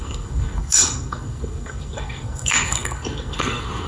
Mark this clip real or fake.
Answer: fake